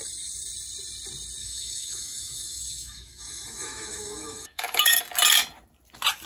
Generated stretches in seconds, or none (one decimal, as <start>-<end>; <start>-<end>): 1.4-5.0